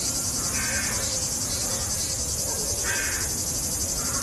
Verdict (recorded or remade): recorded